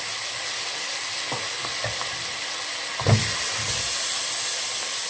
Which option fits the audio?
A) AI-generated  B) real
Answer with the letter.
B